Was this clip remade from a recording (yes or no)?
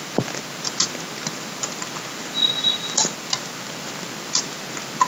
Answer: no